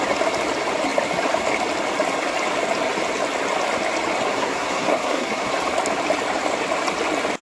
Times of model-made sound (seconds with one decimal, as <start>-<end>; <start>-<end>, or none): 4.3-5.5